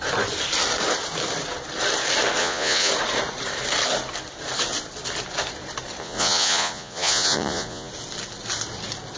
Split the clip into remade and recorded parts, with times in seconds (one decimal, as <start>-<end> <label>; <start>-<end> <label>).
0.0-2.4 recorded; 2.4-2.9 remade; 2.9-6.0 recorded; 6.0-7.9 remade; 7.9-9.2 recorded